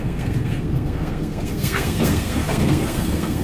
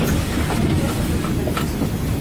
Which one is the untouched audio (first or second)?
second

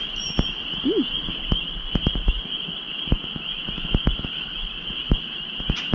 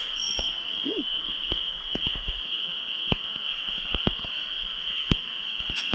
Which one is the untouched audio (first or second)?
first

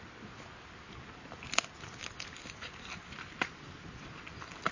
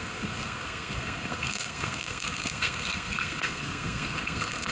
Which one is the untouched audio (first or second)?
first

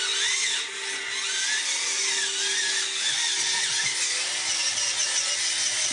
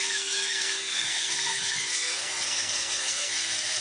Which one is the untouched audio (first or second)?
first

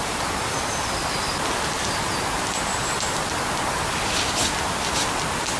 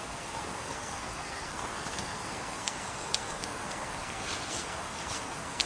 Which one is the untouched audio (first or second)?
first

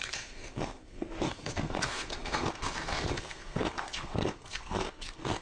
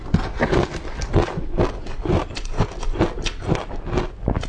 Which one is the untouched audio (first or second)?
second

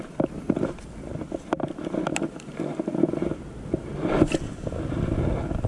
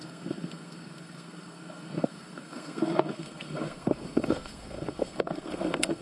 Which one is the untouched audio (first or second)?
first